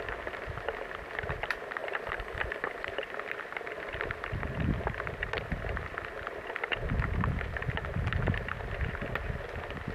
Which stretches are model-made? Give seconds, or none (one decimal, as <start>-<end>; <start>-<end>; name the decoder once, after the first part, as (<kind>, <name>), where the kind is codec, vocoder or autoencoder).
1.8-2.9 (vocoder, BigVGAN v2)